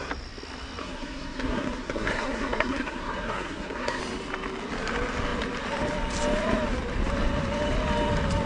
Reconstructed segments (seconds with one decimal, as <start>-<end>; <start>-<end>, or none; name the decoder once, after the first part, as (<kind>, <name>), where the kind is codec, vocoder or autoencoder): 0.8-4.0 (codec, SNAC)